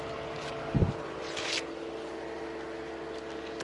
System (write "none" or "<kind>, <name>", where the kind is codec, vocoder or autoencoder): none